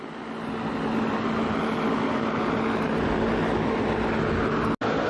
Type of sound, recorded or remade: recorded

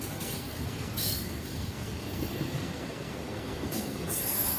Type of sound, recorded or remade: remade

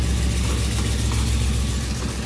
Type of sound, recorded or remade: recorded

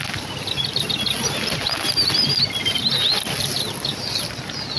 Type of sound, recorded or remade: recorded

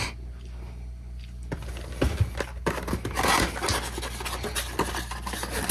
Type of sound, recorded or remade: recorded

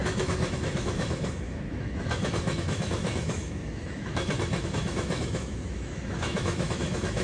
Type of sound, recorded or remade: remade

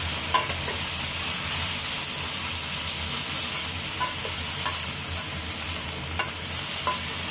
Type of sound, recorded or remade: recorded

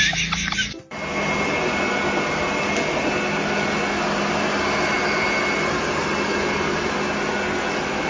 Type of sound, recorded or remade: recorded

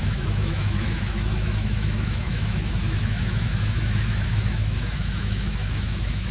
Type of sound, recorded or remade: remade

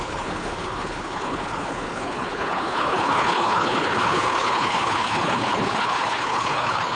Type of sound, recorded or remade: remade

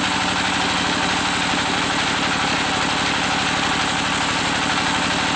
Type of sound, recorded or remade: recorded